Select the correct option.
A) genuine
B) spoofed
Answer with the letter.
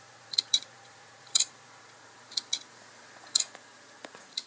B